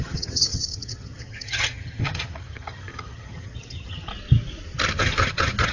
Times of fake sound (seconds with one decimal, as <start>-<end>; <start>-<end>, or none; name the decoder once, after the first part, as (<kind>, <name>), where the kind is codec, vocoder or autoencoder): 0.0-4.1 (vocoder, HiFi-GAN); 5.0-5.7